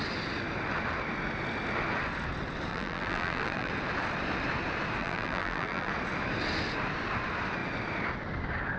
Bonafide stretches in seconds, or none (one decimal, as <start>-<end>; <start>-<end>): 0.0-2.7; 3.7-5.0; 5.9-8.8